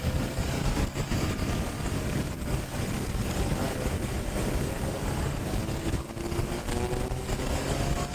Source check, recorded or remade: remade